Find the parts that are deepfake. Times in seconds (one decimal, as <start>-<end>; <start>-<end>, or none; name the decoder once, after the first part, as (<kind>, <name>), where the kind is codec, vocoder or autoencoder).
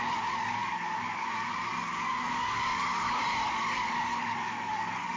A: 0.0-5.2 (codec, DAC)